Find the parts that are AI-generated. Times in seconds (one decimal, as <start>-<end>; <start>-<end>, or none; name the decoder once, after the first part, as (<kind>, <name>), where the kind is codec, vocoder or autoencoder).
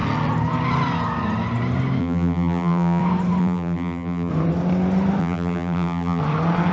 2.0-3.0 (vocoder, BigVGAN v2); 3.4-4.3; 5.2-6.2